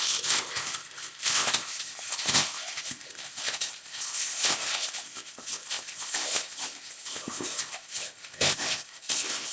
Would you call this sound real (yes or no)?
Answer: no